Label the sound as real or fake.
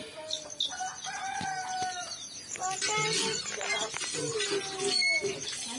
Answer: real